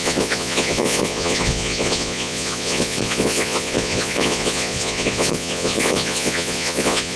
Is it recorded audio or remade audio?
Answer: remade